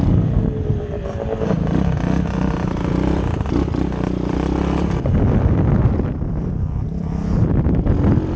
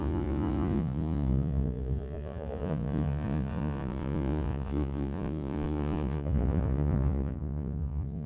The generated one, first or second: second